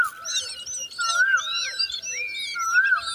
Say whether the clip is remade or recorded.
recorded